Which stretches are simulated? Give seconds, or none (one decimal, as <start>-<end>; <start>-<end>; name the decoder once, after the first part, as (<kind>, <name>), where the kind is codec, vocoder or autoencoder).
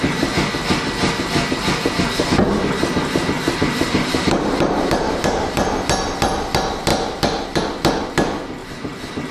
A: 3.6-5.7 (vocoder, BigVGAN v2); 6.9-7.6; 8.6-9.3